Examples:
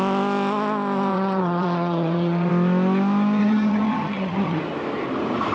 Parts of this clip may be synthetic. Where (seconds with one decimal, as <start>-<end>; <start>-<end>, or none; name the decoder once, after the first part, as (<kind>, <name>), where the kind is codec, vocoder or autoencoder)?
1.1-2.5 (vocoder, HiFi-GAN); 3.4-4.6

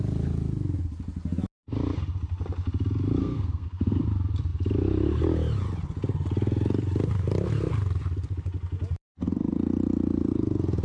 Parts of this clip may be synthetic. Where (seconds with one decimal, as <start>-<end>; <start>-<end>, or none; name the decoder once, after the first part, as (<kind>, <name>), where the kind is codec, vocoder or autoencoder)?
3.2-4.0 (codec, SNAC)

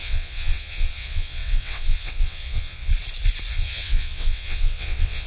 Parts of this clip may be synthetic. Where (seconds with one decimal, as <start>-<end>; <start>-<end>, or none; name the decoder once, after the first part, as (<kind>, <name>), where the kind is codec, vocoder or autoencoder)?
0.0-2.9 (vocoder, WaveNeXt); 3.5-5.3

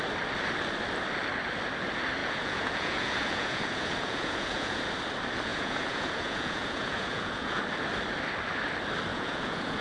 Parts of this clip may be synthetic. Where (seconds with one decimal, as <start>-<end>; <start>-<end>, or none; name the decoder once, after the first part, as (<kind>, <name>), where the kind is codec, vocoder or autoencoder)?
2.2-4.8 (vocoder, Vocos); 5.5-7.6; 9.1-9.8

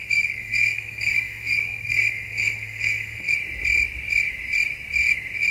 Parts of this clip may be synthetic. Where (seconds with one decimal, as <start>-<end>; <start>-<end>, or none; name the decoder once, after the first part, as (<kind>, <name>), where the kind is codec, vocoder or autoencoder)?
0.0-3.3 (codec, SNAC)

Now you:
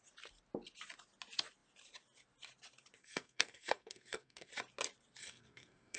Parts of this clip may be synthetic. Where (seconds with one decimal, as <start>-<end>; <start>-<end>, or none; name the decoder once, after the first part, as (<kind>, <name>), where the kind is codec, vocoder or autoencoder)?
3.0-4.5 (codec, SNAC); 5.2-6.0